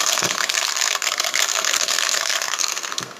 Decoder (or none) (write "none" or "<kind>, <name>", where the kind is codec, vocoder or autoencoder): codec, SNAC